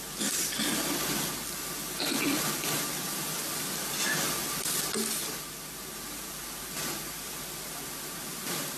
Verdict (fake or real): real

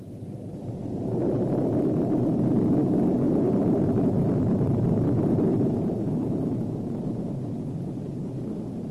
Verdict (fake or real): fake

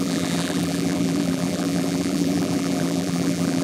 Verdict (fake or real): fake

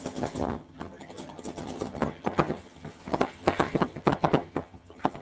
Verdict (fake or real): fake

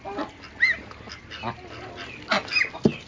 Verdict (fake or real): real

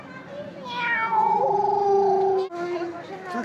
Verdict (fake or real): real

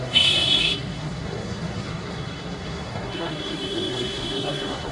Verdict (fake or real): fake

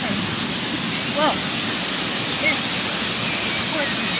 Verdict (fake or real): real